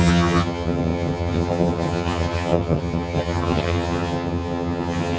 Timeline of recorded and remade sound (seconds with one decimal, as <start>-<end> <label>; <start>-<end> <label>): 0.0-5.2 remade

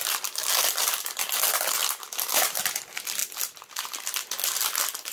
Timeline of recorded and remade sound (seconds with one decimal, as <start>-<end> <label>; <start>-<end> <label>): 0.0-1.8 recorded; 1.8-2.6 remade; 2.6-5.1 recorded

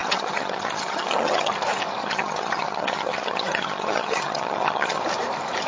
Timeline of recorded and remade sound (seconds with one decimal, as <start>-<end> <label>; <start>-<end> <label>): 0.0-1.5 remade; 1.5-2.0 recorded; 2.0-5.0 remade; 5.0-5.7 recorded

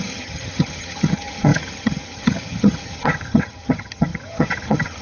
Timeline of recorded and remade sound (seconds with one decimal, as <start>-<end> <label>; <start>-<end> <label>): 0.0-5.0 remade

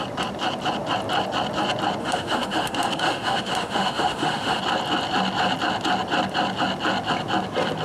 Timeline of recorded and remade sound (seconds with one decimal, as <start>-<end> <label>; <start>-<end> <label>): 0.0-2.0 recorded; 2.0-4.6 remade; 4.6-7.8 recorded